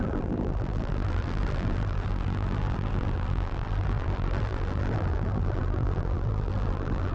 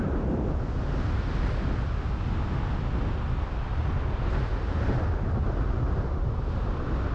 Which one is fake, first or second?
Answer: first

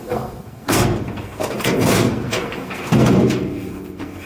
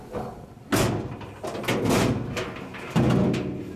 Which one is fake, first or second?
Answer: first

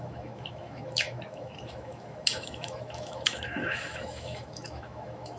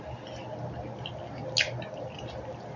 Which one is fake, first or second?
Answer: first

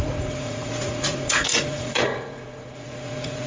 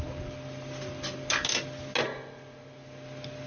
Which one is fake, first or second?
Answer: first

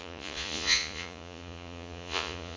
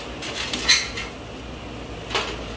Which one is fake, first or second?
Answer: first